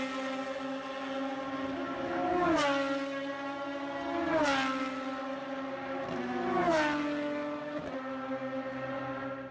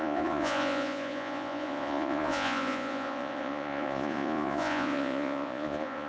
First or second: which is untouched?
first